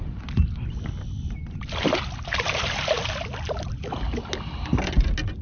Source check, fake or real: real